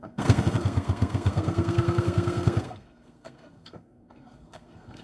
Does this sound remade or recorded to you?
remade